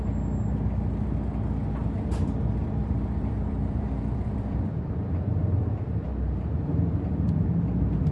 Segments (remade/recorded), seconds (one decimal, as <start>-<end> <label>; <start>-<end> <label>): 0.0-1.8 recorded; 1.8-5.4 remade; 5.4-8.1 recorded